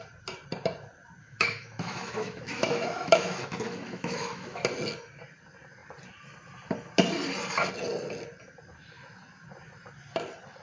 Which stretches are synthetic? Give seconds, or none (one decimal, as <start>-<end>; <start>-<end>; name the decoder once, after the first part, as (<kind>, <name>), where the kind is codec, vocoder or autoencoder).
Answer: 1.2-4.6 (autoencoder, DAC-VAE)